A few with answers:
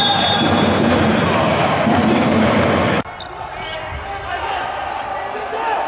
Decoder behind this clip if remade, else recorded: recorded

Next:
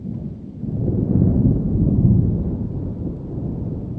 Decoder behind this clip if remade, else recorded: recorded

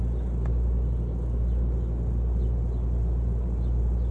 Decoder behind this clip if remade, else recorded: recorded